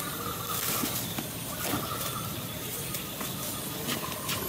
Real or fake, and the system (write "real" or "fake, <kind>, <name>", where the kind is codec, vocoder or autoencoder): real